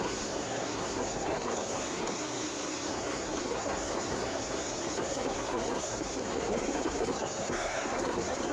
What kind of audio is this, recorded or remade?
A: remade